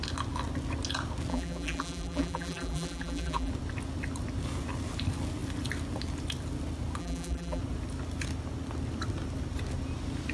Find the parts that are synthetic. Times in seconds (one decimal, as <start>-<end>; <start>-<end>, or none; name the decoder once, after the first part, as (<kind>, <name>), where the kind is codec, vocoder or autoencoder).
1.3-3.5 (vocoder, BigVGAN v2); 7.0-7.6